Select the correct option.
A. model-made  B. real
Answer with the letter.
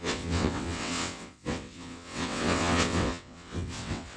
A